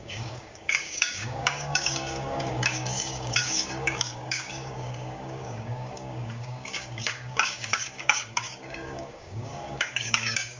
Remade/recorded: remade